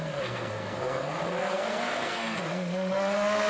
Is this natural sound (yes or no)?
no